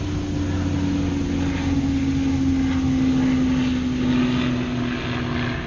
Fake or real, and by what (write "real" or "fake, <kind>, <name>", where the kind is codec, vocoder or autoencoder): real